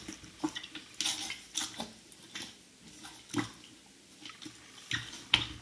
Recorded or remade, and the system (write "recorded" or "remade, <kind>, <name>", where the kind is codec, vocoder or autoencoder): recorded